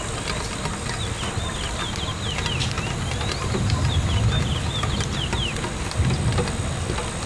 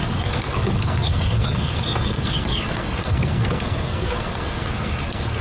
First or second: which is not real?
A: second